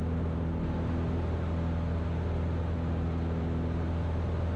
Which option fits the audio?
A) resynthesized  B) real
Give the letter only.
B